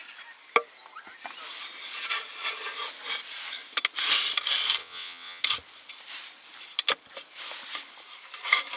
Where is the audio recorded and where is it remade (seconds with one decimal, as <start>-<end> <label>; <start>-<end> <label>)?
0.0-4.8 recorded; 4.8-5.4 remade; 5.4-8.8 recorded